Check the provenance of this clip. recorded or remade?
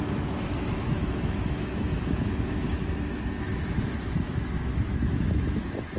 remade